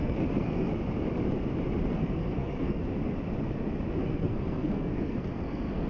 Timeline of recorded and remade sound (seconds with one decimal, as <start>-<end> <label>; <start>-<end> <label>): 0.0-0.7 remade; 0.7-1.9 recorded; 1.9-2.8 remade; 2.8-4.0 recorded; 4.0-5.9 remade